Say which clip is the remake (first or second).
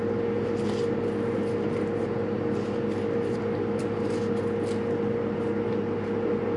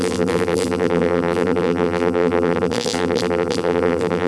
second